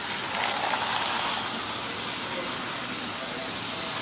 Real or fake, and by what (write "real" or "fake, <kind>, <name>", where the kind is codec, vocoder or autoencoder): real